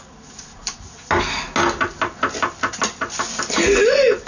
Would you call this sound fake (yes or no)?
no